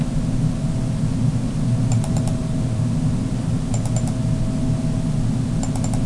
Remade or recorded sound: recorded